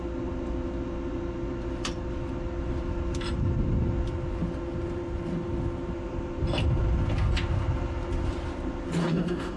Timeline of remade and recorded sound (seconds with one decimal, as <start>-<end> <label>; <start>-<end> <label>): 0.0-9.0 recorded; 9.0-9.6 remade